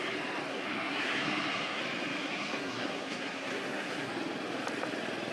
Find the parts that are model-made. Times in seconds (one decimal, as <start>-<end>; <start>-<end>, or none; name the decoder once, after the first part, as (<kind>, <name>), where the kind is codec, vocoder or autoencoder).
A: 0.5-1.8 (codec, SNAC); 2.2-4.1